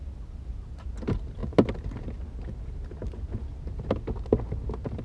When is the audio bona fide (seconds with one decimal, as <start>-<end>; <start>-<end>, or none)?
0.0-5.0